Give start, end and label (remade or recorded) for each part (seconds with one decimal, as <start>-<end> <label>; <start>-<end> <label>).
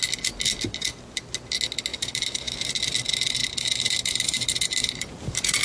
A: 0.0-1.9 recorded; 1.9-2.9 remade; 2.9-3.4 recorded; 3.4-5.6 remade